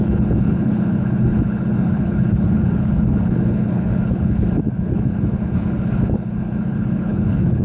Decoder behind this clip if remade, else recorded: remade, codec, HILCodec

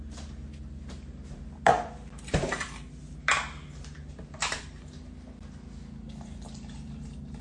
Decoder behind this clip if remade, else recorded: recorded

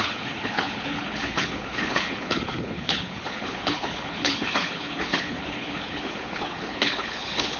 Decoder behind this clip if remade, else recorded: remade, codec, HILCodec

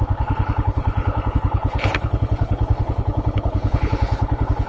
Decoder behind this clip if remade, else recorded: remade, codec, HILCodec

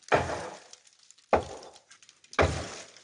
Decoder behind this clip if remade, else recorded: recorded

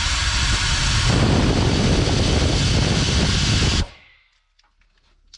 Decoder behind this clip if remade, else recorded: recorded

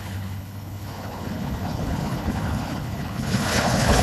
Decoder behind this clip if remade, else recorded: remade, codec, HILCodec